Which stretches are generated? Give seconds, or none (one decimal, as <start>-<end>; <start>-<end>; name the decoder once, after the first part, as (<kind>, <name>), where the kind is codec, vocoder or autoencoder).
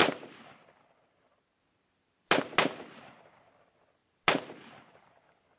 none